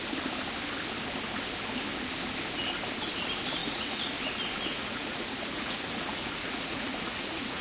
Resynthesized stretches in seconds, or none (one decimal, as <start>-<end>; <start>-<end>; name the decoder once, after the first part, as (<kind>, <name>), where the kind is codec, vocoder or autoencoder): 3.6-4.1 (vocoder, Vocos); 4.7-7.6